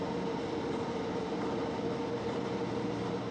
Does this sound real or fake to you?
real